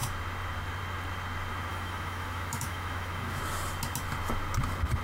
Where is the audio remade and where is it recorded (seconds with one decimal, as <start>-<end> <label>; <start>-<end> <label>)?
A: 0.0-1.7 recorded; 1.7-3.4 remade; 3.4-5.0 recorded